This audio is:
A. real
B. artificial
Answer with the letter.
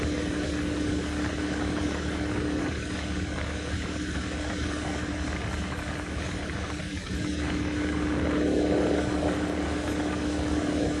B